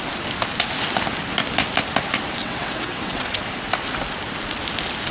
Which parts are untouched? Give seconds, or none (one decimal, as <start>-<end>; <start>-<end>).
0.0-2.4; 3.4-5.1